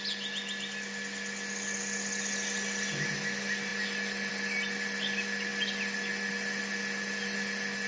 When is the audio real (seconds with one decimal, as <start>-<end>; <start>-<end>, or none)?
0.0-7.9